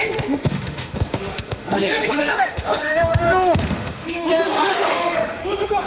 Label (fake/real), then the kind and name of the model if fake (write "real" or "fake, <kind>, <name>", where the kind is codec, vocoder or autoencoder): fake, autoencoder, DAC-VAE